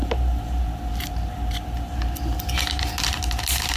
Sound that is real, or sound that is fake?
fake